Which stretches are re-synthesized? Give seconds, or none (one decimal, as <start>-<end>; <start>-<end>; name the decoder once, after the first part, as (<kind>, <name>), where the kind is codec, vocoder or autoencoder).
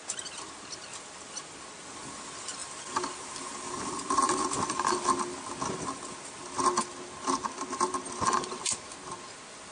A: none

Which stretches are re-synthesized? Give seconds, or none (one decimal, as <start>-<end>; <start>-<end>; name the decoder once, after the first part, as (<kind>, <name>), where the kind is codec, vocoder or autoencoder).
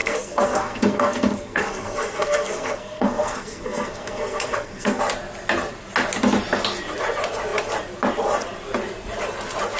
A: 0.0-5.0 (codec, SNAC)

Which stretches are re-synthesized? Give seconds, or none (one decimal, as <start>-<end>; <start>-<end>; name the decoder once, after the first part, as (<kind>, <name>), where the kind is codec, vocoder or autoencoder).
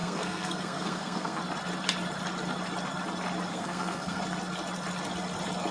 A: 0.0-1.4 (codec, SNAC); 3.5-4.2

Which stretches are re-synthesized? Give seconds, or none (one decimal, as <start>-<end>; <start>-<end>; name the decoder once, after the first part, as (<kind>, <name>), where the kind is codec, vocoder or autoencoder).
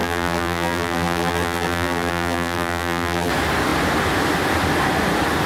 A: 0.0-3.3 (vocoder, BigVGAN v2)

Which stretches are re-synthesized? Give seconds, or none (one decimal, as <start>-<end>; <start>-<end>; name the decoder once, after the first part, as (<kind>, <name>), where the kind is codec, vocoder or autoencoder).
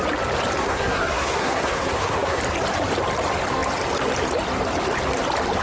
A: 0.6-2.4 (codec, SNAC)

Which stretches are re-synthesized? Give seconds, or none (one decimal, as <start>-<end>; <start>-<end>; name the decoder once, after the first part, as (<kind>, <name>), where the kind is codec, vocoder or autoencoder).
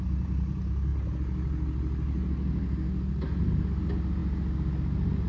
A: none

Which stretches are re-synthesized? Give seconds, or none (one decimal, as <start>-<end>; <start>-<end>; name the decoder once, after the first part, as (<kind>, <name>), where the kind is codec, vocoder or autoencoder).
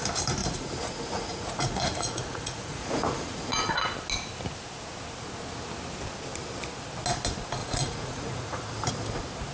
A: 0.4-3.5 (vocoder, Vocos); 7.6-8.9